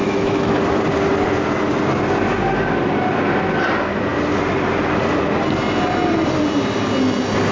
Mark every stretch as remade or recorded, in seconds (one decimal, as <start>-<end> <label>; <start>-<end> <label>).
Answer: 0.0-0.6 remade; 0.6-7.5 recorded